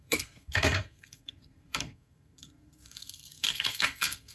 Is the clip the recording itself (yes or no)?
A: no